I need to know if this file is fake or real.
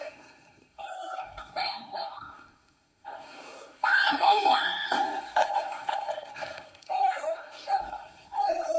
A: fake